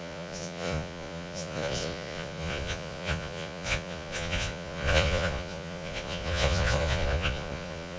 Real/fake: fake